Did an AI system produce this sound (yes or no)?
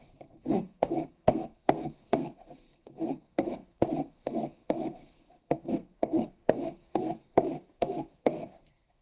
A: yes